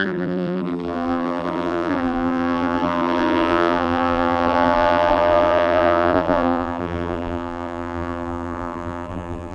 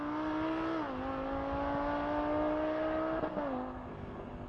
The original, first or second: second